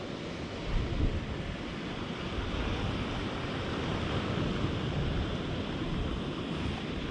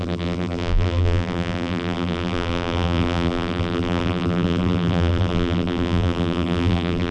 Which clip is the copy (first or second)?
second